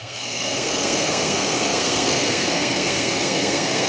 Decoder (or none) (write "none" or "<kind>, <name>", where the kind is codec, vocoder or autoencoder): codec, SNAC